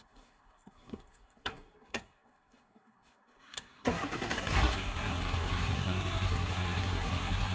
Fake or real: fake